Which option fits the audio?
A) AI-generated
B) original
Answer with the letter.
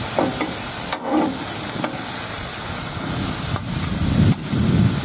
B